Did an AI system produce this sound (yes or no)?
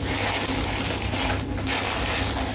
no